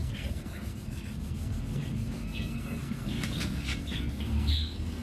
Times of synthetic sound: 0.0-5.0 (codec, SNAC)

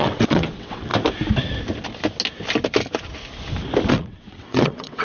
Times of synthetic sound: 0.0-0.9 (vocoder, WaveNeXt); 3.9-5.0

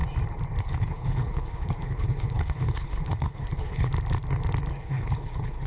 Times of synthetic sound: 0.6-3.9 (codec, HILCodec); 4.8-5.7

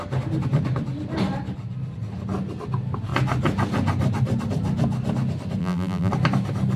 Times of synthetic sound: 5.6-6.1 (vocoder, BigVGAN v2)

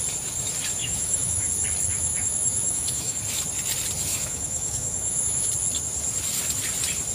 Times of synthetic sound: 0.8-1.5 (autoencoder, DAC-VAE); 1.9-3.2; 4.1-5.5

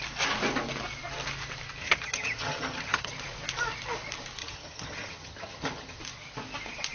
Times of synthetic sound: 1.8-3.1 (vocoder, HiFi-GAN); 4.4-6.0